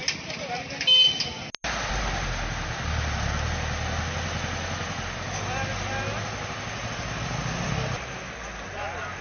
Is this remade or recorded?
recorded